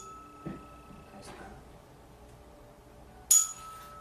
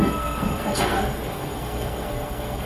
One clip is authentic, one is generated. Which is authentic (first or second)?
first